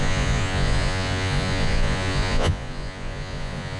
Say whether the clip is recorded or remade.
remade